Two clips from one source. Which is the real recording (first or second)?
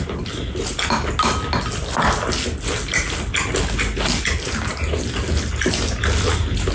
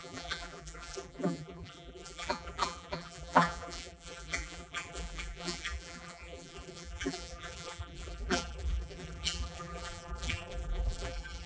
first